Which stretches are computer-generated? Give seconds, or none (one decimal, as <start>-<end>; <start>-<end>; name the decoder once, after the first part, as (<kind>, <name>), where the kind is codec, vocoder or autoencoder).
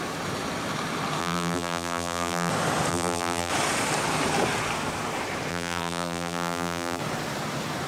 1.2-2.5 (vocoder, BigVGAN v2); 2.9-3.5; 5.5-7.0